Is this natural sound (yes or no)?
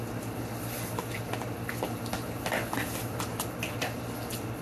yes